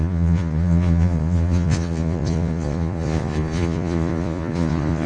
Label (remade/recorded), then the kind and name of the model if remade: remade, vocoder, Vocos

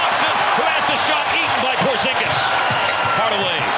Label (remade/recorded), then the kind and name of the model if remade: recorded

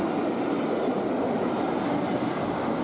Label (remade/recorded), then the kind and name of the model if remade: recorded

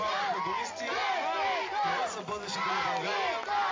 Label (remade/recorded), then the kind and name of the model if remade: recorded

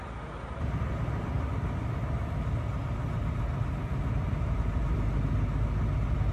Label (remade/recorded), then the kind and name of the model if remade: recorded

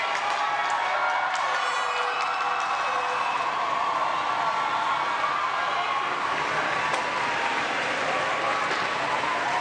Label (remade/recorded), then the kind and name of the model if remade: recorded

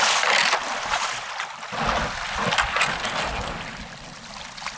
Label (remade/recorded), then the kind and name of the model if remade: recorded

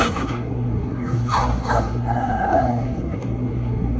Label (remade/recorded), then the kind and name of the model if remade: remade, codec, SNAC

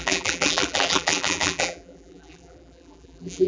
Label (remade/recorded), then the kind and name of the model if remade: remade, vocoder, BigVGAN v2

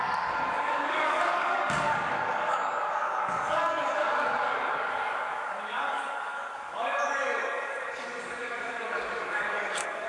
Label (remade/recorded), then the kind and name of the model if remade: remade, codec, DAC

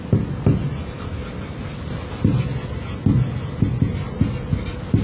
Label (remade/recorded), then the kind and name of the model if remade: recorded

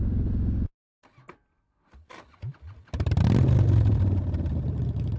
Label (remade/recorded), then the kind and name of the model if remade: recorded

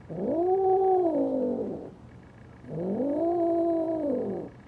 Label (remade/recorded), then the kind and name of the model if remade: recorded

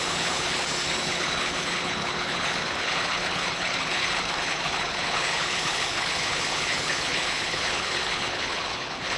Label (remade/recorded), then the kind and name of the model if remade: remade, codec, HILCodec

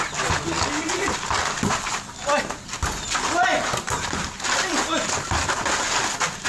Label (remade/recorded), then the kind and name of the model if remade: recorded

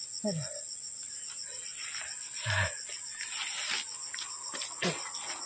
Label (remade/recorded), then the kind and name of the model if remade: recorded